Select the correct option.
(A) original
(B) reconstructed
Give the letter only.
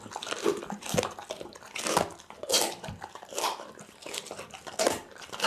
A